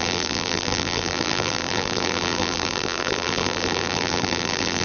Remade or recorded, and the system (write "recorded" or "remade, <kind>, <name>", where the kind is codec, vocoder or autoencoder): remade, vocoder, BigVGAN v2